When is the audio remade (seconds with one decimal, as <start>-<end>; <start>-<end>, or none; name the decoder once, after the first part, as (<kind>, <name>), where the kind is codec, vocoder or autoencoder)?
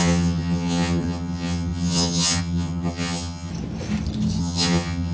0.0-3.5 (vocoder, HiFi-GAN); 4.4-5.1